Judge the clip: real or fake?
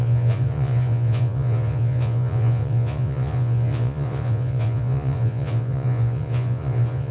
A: fake